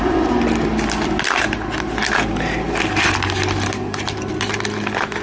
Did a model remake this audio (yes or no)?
no